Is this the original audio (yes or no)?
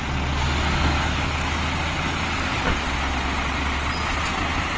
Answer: yes